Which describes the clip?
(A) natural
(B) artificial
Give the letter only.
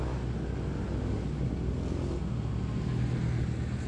A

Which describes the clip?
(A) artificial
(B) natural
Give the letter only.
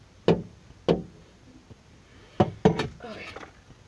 B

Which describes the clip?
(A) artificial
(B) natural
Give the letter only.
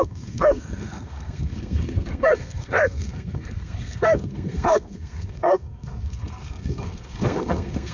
A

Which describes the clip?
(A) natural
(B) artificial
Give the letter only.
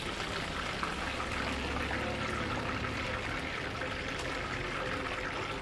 A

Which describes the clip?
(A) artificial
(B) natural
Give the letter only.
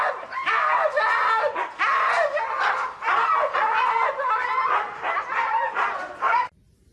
B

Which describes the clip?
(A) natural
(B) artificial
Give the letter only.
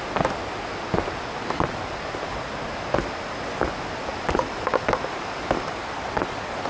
A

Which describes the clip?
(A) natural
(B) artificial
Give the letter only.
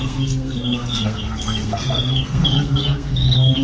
B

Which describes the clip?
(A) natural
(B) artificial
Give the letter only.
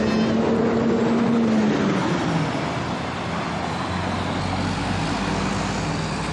A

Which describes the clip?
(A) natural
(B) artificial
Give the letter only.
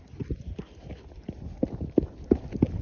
A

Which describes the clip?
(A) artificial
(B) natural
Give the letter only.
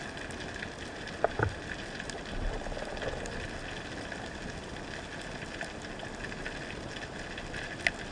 B